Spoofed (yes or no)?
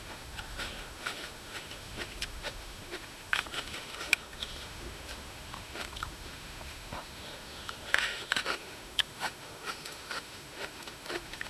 yes